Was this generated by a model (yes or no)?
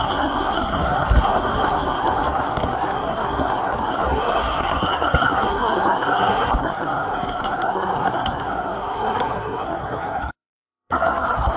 yes